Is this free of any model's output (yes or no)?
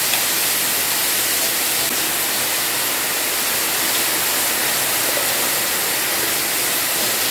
yes